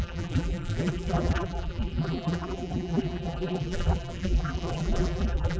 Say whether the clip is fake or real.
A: fake